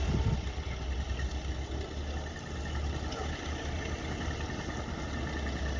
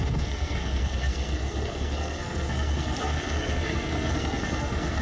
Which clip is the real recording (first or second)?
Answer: first